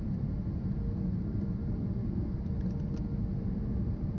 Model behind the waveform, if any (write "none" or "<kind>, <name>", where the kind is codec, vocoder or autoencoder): none